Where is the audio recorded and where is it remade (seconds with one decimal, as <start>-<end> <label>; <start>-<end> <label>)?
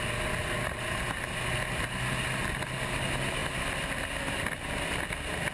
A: 0.0-0.4 recorded; 0.4-1.0 remade; 1.0-5.5 recorded